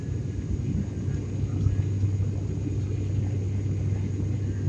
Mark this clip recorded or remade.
recorded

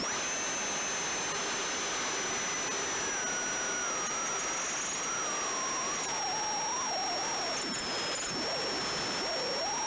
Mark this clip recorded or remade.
recorded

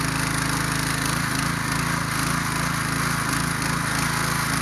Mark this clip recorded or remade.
recorded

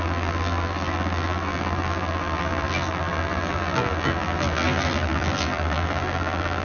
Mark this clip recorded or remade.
remade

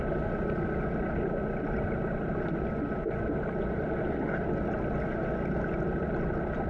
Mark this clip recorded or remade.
recorded